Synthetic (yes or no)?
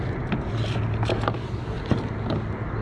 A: no